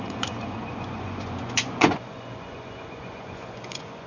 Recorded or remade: remade